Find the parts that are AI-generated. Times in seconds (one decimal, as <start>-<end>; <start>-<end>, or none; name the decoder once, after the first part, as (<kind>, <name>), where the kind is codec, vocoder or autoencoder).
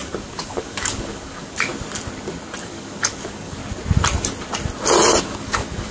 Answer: 0.0-1.7 (codec, DAC); 2.6-3.6; 5.2-5.9